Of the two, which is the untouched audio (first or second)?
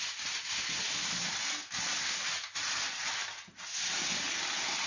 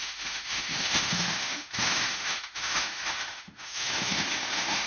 first